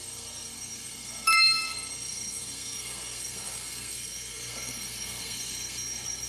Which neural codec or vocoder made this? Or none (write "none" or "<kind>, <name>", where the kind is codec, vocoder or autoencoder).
codec, SNAC